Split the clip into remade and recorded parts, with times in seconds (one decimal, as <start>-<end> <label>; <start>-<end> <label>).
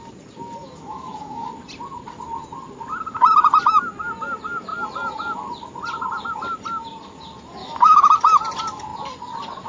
0.0-0.6 recorded; 0.6-1.5 remade; 1.5-7.6 recorded; 7.6-8.1 remade; 8.1-9.7 recorded